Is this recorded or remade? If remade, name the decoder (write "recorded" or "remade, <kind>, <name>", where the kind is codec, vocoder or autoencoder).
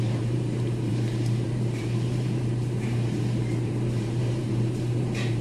remade, vocoder, BigVGAN v2